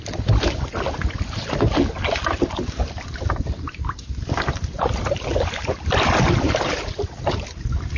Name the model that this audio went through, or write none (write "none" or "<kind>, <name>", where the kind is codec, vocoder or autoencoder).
none